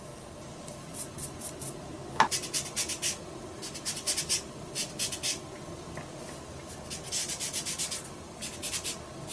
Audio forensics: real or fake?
real